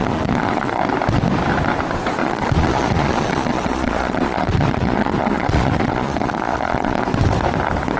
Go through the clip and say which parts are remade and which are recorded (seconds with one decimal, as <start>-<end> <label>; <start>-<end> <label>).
0.0-0.8 remade; 0.8-2.2 recorded; 2.2-7.0 remade; 7.0-8.0 recorded